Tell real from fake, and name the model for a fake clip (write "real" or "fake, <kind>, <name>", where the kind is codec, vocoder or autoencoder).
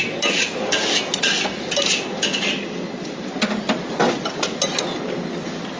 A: real